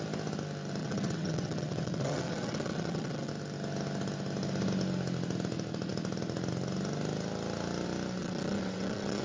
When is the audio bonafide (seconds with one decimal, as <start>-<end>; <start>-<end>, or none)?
0.0-0.8; 3.3-8.2